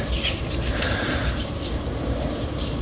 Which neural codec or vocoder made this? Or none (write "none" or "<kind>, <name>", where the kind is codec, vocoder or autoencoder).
none